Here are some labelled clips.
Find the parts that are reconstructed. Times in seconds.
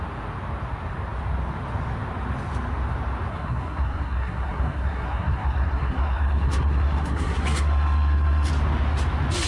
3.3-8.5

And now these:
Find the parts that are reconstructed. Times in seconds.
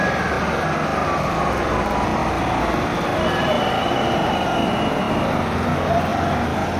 none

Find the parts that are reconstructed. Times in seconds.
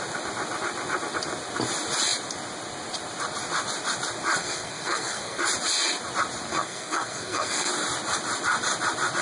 4.4-5.4; 6.5-7.7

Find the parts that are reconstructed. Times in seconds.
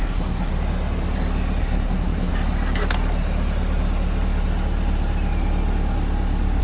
0.0-0.5; 1.6-2.3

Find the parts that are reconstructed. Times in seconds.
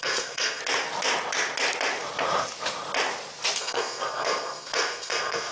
0.0-0.6; 3.6-5.5